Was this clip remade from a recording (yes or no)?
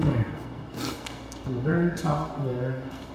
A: yes